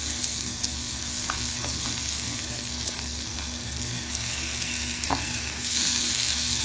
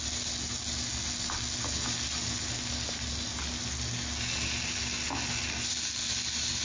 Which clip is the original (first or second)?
second